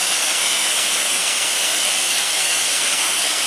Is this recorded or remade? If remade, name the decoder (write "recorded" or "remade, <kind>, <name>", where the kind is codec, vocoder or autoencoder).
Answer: remade, codec, SNAC